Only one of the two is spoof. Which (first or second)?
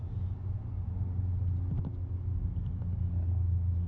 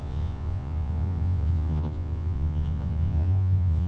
second